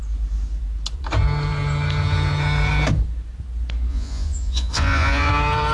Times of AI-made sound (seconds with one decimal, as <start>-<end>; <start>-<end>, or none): 3.9-5.3